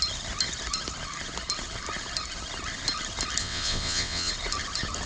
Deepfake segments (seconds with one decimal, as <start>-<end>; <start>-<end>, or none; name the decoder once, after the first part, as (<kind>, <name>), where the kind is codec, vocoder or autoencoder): 3.4-4.3 (vocoder, WaveNeXt)